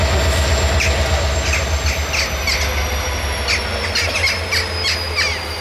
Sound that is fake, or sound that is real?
real